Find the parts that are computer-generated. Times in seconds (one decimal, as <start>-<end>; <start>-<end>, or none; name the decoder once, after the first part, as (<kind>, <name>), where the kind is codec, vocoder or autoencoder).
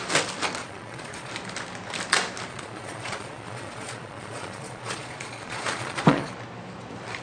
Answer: 0.6-1.3 (vocoder, Vocos); 2.5-6.3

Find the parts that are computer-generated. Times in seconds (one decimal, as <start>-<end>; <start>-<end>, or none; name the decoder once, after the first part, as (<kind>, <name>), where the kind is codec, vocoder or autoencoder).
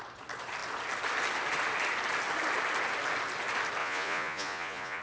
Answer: 3.8-5.0 (vocoder, Vocos)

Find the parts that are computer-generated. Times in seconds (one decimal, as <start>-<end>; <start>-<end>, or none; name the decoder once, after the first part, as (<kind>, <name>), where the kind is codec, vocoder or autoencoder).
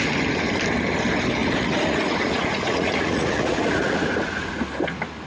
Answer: 1.4-4.6 (vocoder, Vocos)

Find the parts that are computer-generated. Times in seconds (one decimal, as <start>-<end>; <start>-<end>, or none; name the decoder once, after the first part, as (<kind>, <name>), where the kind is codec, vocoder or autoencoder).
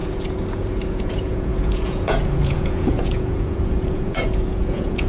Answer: 0.0-5.1 (vocoder, Vocos)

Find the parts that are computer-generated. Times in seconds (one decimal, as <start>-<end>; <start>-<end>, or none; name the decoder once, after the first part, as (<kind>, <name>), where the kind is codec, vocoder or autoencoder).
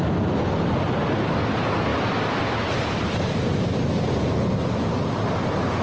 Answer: none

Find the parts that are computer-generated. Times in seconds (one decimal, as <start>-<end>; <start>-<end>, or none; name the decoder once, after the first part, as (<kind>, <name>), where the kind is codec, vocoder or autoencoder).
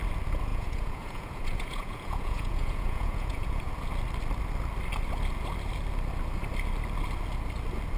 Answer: 0.5-3.7 (vocoder, Vocos)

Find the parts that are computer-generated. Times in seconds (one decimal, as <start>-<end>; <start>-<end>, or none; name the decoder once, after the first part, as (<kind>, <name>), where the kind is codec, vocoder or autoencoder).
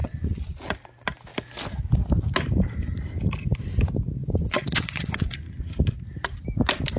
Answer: 0.0-0.6 (vocoder, Vocos); 4.2-5.7